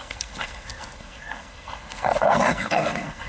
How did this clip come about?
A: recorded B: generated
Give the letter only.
B